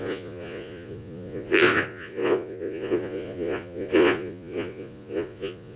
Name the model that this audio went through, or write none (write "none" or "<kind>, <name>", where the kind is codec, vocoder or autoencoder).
vocoder, Vocos